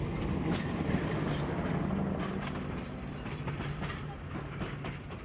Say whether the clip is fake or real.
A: real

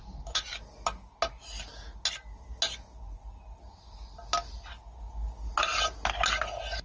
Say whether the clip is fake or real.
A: real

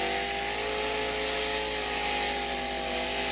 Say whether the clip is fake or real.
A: real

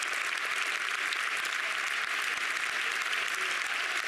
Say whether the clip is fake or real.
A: real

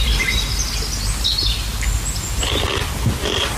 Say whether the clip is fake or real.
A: real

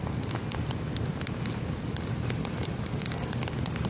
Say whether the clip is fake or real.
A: real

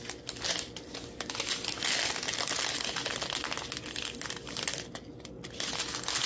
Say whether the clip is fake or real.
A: real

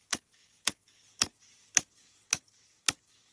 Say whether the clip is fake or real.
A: fake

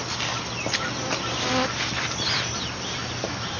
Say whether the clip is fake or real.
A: real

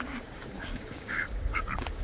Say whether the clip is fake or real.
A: fake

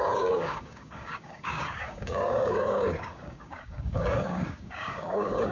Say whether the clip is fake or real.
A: fake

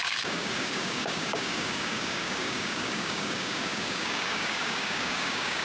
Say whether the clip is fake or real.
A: fake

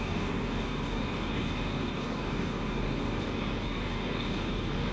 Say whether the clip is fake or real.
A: fake